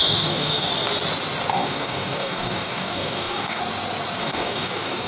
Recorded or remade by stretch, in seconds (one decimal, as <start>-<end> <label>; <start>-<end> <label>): 0.0-0.7 remade; 0.7-1.5 recorded; 1.5-3.6 remade; 3.6-4.2 recorded; 4.2-5.1 remade

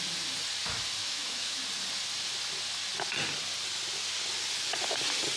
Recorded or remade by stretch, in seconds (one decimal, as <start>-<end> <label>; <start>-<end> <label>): 0.0-1.0 recorded; 1.0-1.6 remade; 1.6-5.4 recorded

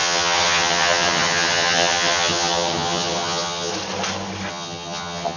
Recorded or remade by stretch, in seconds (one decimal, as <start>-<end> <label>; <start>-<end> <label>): 0.0-3.7 remade; 3.7-4.5 recorded; 4.5-5.4 remade

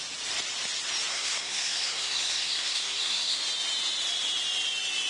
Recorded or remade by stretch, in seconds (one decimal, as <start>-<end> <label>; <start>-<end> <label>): 0.0-1.1 recorded; 1.1-3.4 remade; 3.4-5.1 recorded

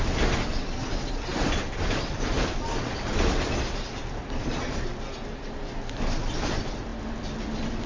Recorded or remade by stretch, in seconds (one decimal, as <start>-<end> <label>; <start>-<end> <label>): 0.0-7.9 recorded

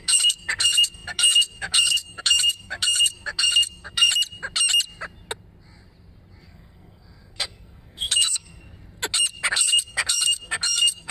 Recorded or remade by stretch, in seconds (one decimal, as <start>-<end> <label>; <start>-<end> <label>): 0.0-4.1 remade; 4.1-6.4 recorded; 6.4-8.6 remade; 8.6-9.5 recorded; 9.5-11.1 remade